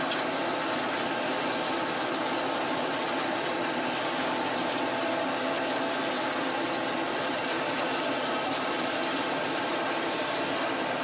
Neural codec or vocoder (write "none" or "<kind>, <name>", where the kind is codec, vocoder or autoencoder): none